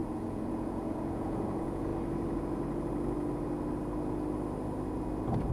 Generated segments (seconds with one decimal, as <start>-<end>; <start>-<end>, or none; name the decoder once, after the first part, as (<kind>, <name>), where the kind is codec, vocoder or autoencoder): 0.0-1.9 (vocoder, Vocos)